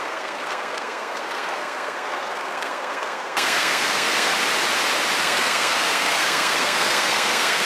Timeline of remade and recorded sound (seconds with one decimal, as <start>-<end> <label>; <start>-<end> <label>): 0.0-4.3 remade; 4.3-5.2 recorded; 5.2-7.7 remade